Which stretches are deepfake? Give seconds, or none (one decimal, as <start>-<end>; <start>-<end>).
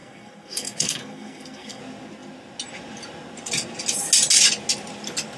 0.0-1.8